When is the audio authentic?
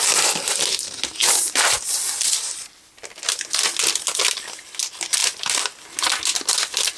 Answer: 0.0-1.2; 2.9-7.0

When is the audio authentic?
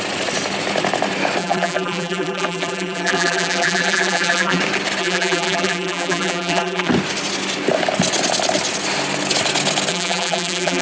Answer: 0.0-1.4; 4.6-5.0; 6.9-9.9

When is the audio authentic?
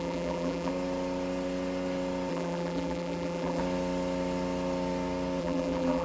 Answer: 0.7-2.3; 3.6-5.4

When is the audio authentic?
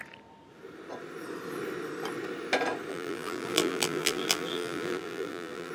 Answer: 0.0-2.9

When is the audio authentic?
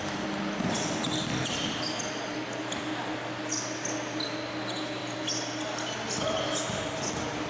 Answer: 0.0-7.5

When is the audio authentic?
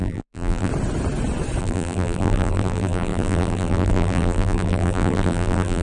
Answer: 0.7-1.6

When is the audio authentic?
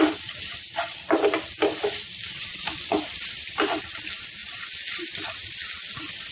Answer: none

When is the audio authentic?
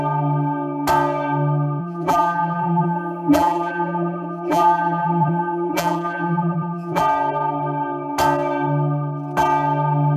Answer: 0.0-1.8; 7.0-10.2